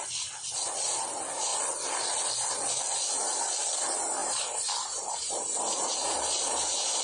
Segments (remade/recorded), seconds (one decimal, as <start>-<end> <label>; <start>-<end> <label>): 0.0-4.2 recorded; 4.2-5.1 remade; 5.1-5.9 recorded; 5.9-7.0 remade